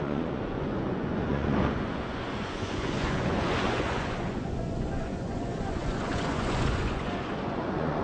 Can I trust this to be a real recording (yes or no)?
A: no